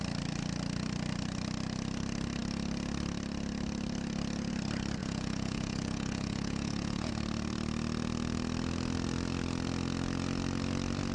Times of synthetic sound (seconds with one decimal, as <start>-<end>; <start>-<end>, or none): 5.0-7.1